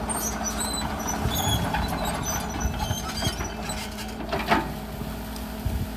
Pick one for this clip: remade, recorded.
recorded